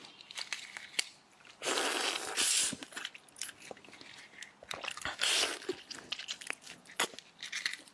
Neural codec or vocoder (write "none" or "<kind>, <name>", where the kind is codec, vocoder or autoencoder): none